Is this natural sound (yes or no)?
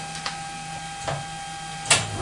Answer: yes